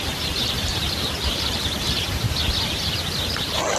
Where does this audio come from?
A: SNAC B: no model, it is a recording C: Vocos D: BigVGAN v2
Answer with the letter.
D